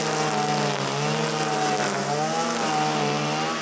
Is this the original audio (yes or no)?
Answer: yes